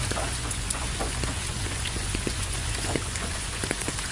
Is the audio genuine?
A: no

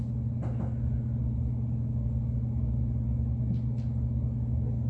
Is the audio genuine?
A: yes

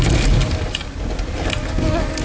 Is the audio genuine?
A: yes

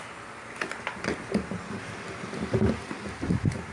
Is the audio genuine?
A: yes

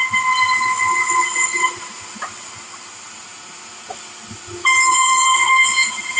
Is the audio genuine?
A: yes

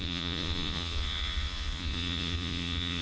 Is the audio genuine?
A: no